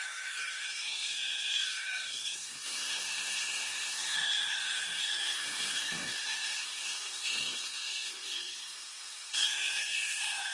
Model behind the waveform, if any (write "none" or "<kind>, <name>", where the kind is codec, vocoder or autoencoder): codec, SNAC